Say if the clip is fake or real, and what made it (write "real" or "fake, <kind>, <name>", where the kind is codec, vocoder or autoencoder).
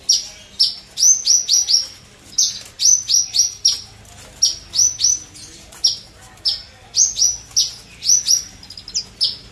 real